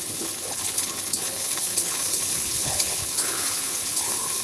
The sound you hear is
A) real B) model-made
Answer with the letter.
B